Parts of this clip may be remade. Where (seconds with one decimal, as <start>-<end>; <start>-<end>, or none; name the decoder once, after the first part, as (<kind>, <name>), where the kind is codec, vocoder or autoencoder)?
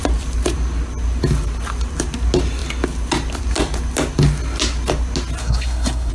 5.4-6.1 (codec, SNAC)